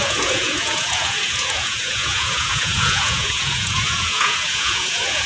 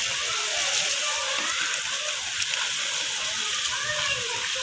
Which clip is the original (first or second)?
second